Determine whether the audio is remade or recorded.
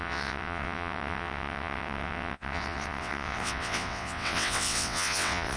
remade